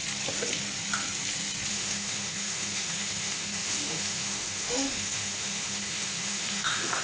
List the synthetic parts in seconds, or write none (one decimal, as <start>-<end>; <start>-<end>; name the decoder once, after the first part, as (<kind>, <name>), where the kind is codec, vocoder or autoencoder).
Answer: 1.7-7.0 (autoencoder, DAC-VAE)